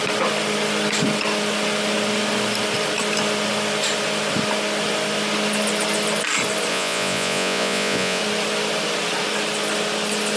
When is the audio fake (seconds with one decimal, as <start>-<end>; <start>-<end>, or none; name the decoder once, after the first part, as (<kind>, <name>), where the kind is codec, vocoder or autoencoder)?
6.7-8.2 (vocoder, Vocos)